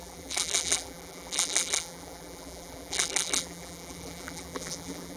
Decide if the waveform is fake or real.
fake